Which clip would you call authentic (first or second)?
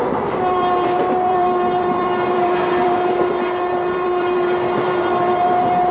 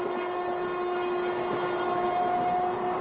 second